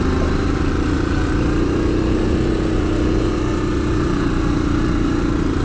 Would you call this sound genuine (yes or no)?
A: no